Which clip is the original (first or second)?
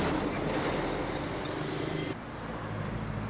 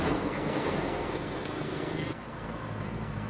first